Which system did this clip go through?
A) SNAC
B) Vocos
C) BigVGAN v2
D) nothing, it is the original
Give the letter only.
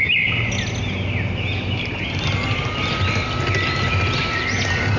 D